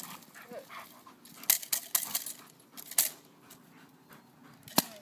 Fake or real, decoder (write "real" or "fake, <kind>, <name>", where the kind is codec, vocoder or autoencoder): real